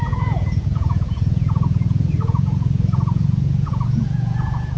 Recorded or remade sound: remade